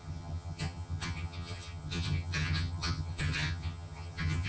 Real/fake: fake